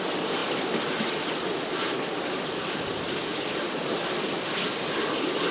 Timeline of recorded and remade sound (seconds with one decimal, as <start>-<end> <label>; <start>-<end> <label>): 0.0-0.4 remade; 0.4-1.0 recorded; 1.0-3.3 remade; 3.3-4.3 recorded; 4.3-5.5 remade